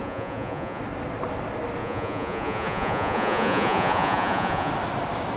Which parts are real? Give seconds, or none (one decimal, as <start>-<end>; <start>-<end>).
0.8-1.8; 4.7-5.4